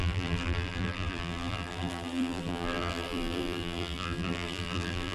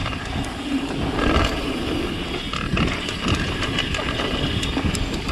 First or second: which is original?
second